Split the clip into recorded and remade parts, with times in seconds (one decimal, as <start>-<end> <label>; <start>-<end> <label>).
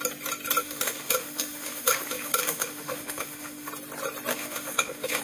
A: 0.0-0.6 recorded; 0.6-3.7 remade; 3.7-4.3 recorded; 4.3-5.2 remade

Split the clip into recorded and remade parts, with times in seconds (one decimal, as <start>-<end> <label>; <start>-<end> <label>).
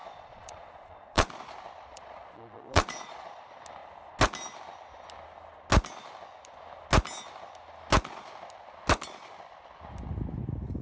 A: 0.0-1.3 remade; 1.3-1.9 recorded; 1.9-3.4 remade; 3.4-10.8 recorded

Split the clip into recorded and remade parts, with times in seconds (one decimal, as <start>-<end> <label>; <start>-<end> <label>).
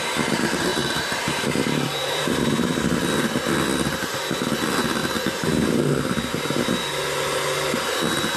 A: 0.0-0.7 recorded; 0.7-2.8 remade; 2.8-8.4 recorded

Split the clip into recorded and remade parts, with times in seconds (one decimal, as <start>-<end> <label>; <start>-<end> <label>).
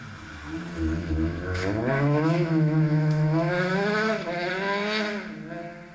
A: 0.0-1.0 recorded; 1.0-4.5 remade; 4.5-5.9 recorded